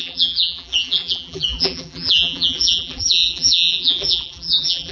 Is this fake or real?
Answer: fake